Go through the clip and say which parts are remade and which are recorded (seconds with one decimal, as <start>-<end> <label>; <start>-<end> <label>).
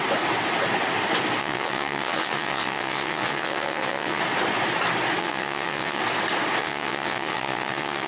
0.0-1.4 recorded; 1.4-4.2 remade; 4.2-5.2 recorded; 5.2-6.0 remade; 6.0-6.6 recorded; 6.6-8.1 remade